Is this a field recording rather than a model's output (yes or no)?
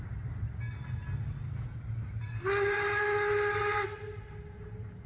yes